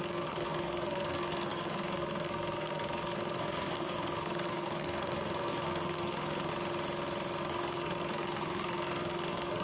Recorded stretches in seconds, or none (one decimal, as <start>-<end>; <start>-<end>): 6.5-7.4